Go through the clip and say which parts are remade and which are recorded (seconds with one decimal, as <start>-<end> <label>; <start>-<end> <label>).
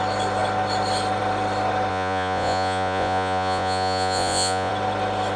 0.0-1.9 recorded; 1.9-4.7 remade; 4.7-5.4 recorded